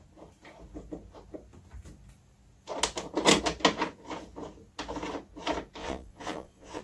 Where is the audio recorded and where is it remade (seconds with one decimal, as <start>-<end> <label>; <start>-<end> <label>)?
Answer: 0.0-5.8 recorded; 5.8-6.8 remade